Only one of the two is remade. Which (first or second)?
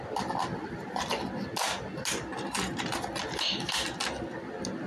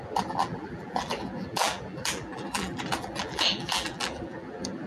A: second